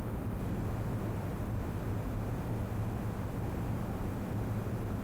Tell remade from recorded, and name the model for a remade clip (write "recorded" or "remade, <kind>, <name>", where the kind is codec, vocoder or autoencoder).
recorded